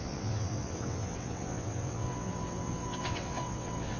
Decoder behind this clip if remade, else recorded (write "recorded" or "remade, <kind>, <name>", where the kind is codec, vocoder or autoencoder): remade, vocoder, WaveNeXt